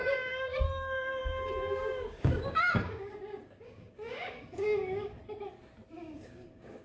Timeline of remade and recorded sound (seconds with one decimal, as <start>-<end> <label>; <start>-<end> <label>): 0.0-5.2 remade; 5.2-6.0 recorded; 6.0-6.8 remade